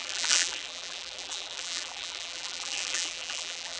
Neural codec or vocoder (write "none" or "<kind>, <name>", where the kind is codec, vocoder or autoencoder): vocoder, BigVGAN v2